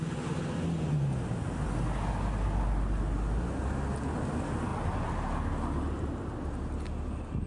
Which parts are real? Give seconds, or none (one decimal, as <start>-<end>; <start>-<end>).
0.0-7.5